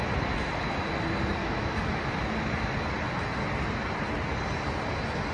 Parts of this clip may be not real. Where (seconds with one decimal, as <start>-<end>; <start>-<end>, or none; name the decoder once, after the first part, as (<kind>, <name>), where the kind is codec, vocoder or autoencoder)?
1.4-2.0 (autoencoder, DAC-VAE)